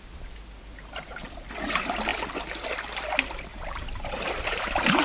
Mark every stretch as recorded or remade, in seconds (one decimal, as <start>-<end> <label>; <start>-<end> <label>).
0.0-0.7 recorded; 0.7-1.4 remade; 1.4-3.5 recorded; 3.5-4.3 remade; 4.3-5.0 recorded